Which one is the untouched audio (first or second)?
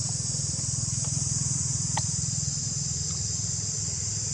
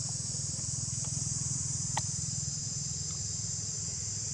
second